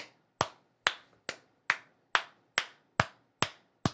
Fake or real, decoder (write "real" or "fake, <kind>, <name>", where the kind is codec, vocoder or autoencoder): real